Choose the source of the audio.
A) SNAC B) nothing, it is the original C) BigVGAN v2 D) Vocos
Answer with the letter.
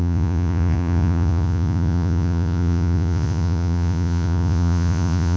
D